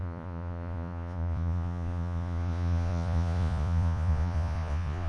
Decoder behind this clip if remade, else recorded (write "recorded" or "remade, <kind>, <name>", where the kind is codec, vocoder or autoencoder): remade, vocoder, Vocos